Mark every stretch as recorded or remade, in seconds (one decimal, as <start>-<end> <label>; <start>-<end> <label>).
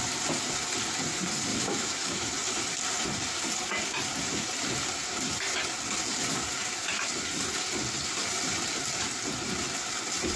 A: 0.0-1.5 recorded; 1.5-2.3 remade; 2.3-10.4 recorded